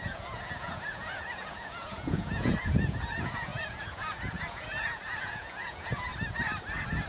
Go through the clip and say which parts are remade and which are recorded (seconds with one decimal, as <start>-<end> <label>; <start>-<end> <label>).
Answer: 0.0-6.1 remade; 6.1-7.1 recorded